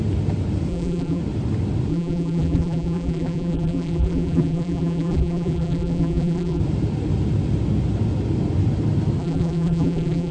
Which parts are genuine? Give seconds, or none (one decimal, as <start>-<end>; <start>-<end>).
0.0-0.7; 1.2-1.9; 6.6-9.2